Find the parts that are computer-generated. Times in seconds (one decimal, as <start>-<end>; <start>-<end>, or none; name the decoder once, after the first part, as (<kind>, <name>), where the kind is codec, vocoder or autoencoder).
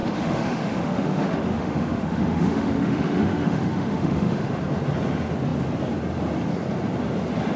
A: 0.0-4.6 (autoencoder, DAC-VAE)